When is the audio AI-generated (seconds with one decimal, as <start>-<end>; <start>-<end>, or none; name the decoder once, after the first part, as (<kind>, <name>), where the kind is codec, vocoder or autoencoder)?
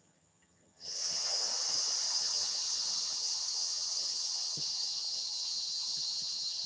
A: 0.0-1.5 (vocoder, HiFi-GAN); 2.1-6.7